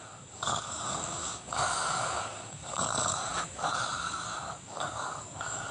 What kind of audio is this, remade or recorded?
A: remade